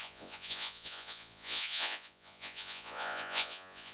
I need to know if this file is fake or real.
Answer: fake